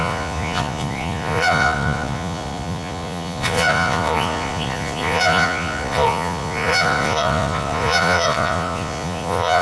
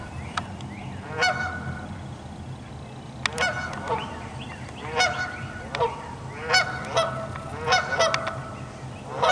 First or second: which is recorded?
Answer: second